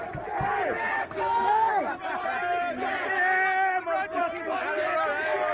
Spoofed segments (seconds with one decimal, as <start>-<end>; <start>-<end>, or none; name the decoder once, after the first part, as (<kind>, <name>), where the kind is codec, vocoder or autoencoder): 1.0-1.8 (codec, SNAC)